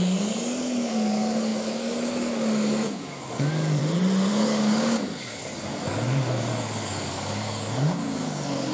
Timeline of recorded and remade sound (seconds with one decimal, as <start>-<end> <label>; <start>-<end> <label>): 0.0-3.8 remade; 3.8-4.3 recorded; 4.3-8.7 remade